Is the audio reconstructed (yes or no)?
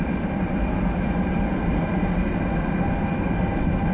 no